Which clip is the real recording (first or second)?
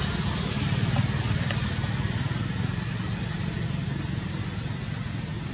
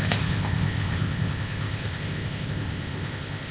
first